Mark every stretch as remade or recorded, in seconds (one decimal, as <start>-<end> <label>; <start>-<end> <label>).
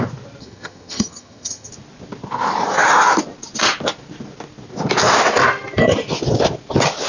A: 0.0-0.4 recorded; 0.4-1.7 remade; 1.7-7.1 recorded